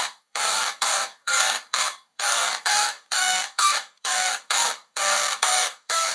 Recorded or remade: remade